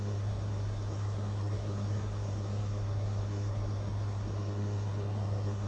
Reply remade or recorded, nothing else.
remade